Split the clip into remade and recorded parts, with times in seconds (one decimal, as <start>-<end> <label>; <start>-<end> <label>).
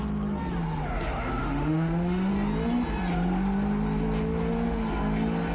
0.0-1.4 recorded; 1.4-2.3 remade; 2.3-5.5 recorded